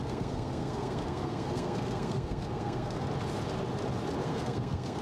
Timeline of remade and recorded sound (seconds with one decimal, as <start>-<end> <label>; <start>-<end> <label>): 0.0-3.0 remade; 3.0-4.2 recorded; 4.2-5.0 remade